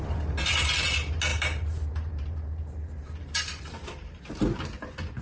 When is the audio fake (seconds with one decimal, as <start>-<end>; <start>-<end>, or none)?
1.3-4.4